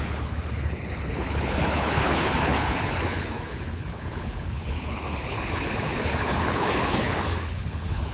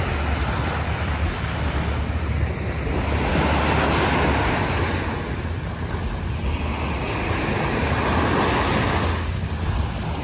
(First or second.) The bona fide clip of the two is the second